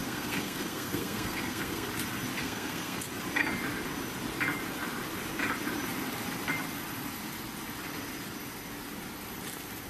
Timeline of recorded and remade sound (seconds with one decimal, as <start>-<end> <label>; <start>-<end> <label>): 0.0-1.9 remade; 1.9-2.4 recorded; 2.4-3.0 remade; 3.0-9.9 recorded